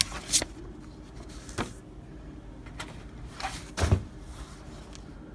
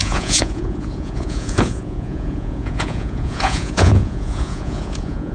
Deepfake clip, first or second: second